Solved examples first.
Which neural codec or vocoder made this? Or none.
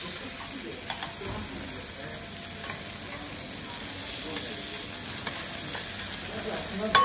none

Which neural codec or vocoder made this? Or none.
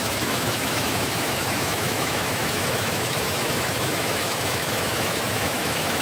autoencoder, DAC-VAE